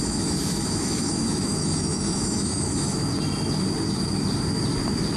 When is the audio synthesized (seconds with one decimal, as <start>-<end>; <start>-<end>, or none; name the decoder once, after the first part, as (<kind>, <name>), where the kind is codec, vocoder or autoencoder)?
0.0-3.1 (autoencoder, DAC-VAE)